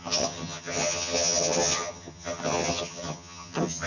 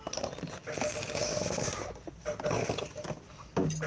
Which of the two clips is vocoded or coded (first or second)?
first